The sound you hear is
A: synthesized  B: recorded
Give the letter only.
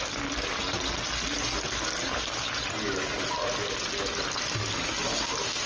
B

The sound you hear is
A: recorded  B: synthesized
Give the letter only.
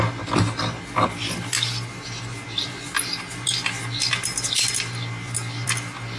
A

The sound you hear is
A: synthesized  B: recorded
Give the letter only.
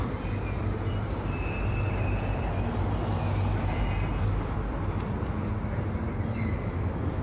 B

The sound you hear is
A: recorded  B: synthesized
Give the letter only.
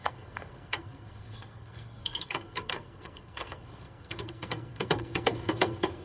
B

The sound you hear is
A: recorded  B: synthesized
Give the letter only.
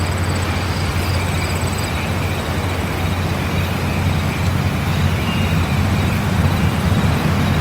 A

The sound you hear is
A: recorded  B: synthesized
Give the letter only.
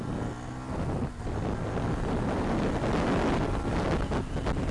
A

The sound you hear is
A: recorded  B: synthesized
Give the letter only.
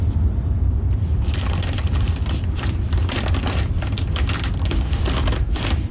B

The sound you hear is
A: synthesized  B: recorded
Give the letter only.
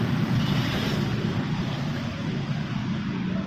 A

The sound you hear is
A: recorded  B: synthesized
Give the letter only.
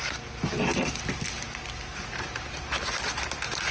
A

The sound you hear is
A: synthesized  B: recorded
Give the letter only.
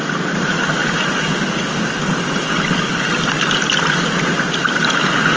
B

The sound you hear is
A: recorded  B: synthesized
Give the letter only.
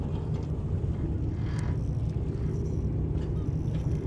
A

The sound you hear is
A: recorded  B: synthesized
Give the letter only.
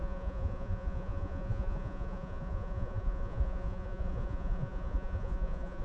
B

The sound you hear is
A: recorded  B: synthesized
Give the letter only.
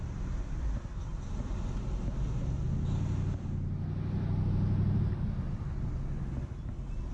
A